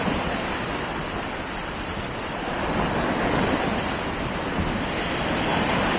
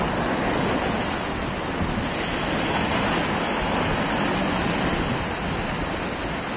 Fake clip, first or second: first